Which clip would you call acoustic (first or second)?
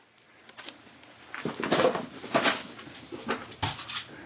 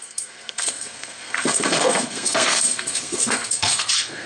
first